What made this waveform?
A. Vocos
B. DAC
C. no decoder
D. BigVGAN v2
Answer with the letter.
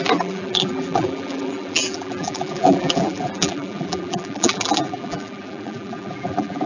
D